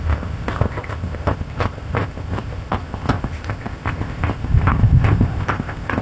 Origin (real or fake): fake